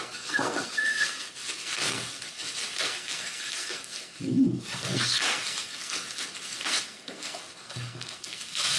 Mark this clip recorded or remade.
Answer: remade